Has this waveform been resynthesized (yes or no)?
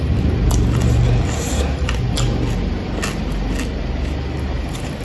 no